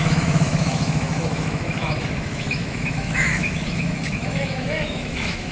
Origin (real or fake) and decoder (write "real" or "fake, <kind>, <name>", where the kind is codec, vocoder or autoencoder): fake, autoencoder, DAC-VAE